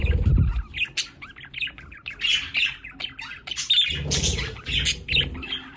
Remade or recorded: recorded